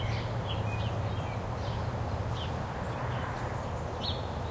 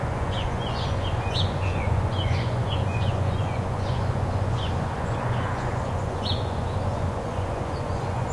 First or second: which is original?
first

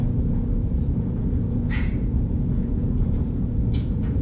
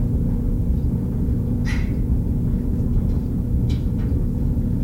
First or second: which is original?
second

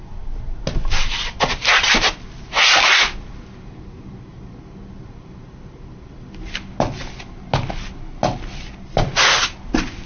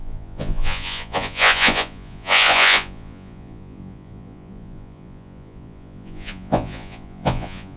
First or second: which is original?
first